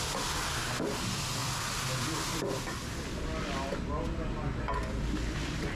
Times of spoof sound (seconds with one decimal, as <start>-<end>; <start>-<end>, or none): none

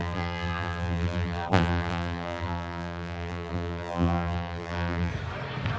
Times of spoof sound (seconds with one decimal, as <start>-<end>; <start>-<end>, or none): 0.0-5.1

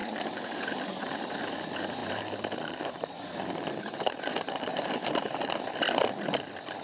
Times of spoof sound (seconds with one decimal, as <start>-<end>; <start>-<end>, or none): 0.0-0.6; 2.0-5.6

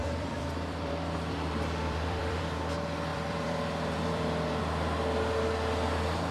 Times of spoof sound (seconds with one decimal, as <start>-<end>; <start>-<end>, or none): 0.0-2.4; 3.1-4.6

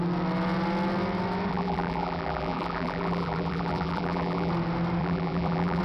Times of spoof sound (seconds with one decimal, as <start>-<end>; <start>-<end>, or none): 1.5-4.5; 5.0-5.8